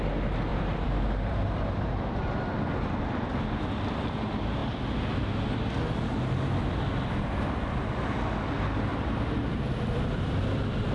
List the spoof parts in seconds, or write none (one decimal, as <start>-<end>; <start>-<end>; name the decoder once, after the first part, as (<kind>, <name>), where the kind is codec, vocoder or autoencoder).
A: 0.5-3.6 (vocoder, BigVGAN v2); 8.9-10.4